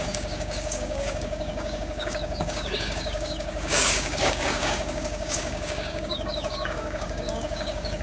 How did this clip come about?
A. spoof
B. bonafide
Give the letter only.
A